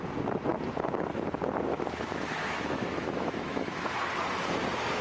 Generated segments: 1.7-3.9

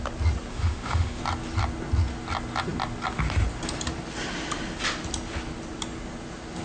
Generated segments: 0.5-1.2

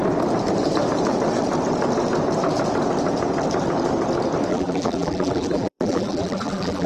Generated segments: 4.5-6.9

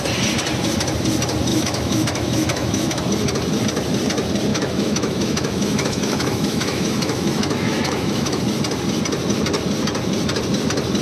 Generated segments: 1.5-3.0; 4.5-8.4

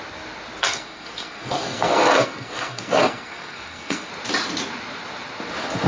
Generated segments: 0.6-4.1

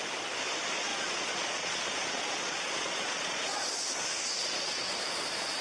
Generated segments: 0.9-3.8; 4.4-5.0